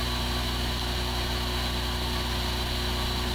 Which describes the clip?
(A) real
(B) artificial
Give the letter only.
A